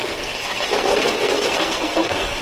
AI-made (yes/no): yes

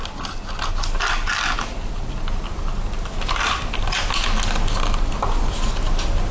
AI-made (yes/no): no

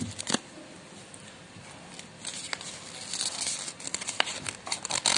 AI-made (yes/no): no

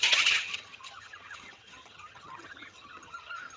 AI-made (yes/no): yes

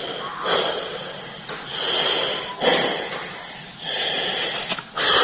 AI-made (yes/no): no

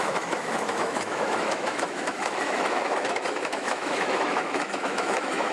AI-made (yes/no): yes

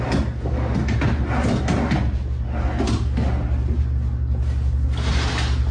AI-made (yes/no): no